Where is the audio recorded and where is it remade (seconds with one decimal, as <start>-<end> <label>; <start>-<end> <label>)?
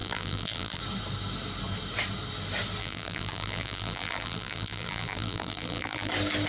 0.0-0.8 remade; 0.8-2.8 recorded; 2.8-6.1 remade; 6.1-6.5 recorded